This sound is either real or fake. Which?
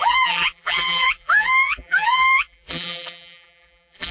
fake